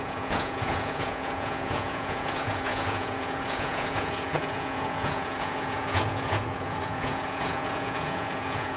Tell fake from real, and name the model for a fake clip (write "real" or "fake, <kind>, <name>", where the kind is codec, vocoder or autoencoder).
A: fake, vocoder, Vocos